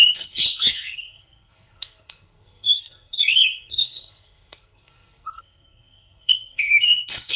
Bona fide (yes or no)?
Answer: no